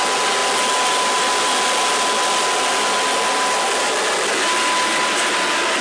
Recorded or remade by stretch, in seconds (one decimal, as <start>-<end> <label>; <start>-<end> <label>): 0.0-5.8 recorded